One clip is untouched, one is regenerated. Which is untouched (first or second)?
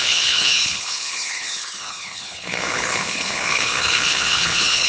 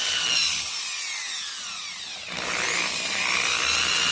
second